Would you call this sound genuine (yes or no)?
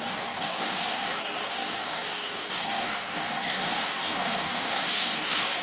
no